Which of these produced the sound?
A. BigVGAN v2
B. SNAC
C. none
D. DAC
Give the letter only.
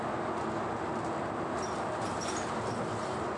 C